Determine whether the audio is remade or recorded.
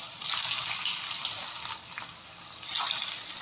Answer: recorded